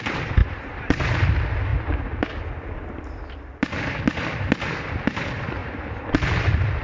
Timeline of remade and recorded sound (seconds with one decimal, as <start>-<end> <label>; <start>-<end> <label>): 0.0-0.4 recorded; 0.4-1.2 remade; 1.2-5.6 recorded; 5.6-6.2 remade; 6.2-6.8 recorded